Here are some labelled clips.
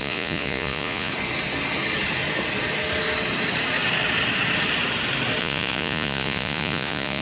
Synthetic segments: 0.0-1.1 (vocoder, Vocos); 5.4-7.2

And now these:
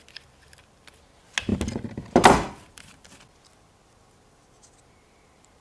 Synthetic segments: none

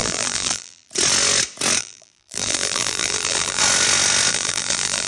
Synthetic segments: 0.0-0.9 (vocoder, BigVGAN v2); 1.8-3.6; 4.3-5.1